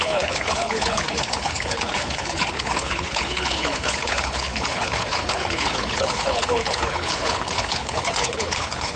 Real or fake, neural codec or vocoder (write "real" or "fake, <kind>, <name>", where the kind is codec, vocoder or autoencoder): fake, codec, HILCodec